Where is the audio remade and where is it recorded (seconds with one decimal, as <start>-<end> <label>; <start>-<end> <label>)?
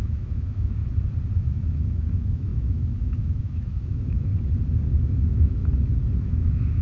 0.0-0.8 remade; 0.8-1.4 recorded; 1.4-4.3 remade; 4.3-5.0 recorded; 5.0-5.6 remade; 5.6-6.2 recorded; 6.2-6.8 remade